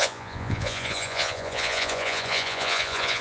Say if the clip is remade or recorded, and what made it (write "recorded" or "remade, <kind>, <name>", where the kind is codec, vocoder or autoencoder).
remade, vocoder, Vocos